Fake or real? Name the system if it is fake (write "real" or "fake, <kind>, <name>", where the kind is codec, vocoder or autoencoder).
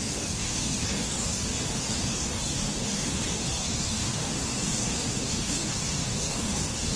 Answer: fake, codec, DAC